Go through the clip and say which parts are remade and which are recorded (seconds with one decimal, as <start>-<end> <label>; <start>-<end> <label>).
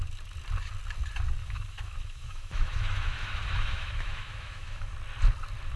0.0-1.4 recorded; 1.4-4.9 remade; 4.9-5.8 recorded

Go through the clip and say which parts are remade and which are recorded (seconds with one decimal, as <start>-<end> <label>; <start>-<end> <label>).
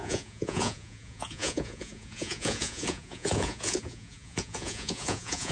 0.0-5.5 remade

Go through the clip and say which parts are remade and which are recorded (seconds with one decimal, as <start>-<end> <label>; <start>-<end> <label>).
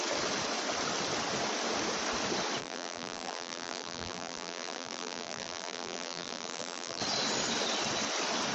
0.0-2.6 recorded; 2.6-7.0 remade; 7.0-8.5 recorded